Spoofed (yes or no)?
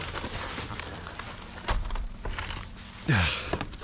no